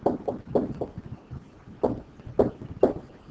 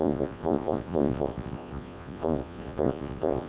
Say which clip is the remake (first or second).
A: second